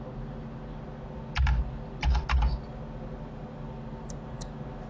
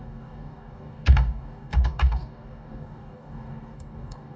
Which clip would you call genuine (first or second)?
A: first